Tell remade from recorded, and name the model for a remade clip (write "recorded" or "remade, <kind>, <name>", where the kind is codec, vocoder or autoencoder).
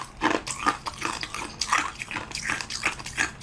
recorded